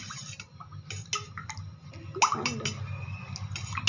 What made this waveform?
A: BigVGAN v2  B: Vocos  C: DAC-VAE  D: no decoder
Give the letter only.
D